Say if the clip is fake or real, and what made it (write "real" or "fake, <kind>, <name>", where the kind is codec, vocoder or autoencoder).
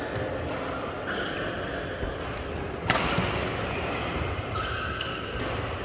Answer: real